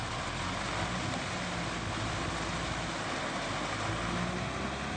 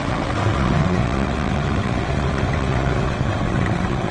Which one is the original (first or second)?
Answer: first